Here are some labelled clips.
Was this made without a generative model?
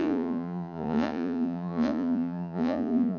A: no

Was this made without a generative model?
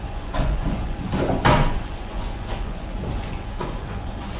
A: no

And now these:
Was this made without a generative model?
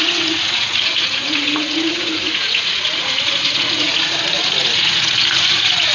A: no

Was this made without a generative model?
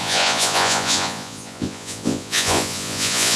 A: no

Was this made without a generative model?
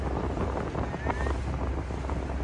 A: yes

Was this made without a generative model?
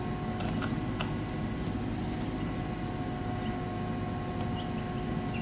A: yes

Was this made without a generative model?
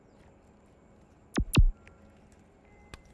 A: yes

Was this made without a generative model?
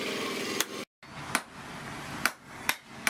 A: yes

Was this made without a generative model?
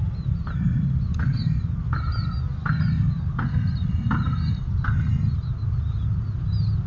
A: yes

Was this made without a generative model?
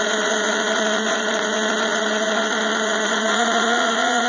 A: no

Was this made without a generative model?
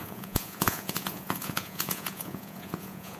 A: no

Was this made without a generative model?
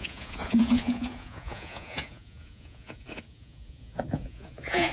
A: no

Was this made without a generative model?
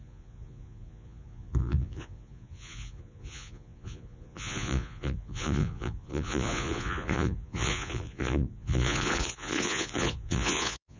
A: no